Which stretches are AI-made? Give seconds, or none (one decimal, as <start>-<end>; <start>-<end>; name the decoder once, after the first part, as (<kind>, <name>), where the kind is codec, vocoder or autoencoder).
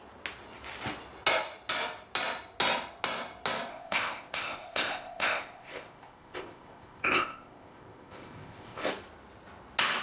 3.7-8.9 (codec, ZipCodec)